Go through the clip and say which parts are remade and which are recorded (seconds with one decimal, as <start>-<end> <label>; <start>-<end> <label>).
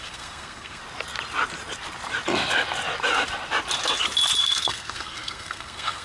0.0-0.8 remade; 0.8-4.4 recorded; 4.4-6.0 remade